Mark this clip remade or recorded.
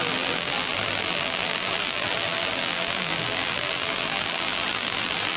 remade